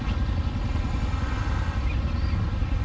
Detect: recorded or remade recorded